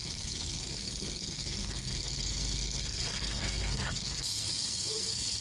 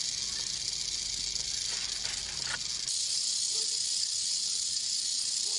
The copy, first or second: first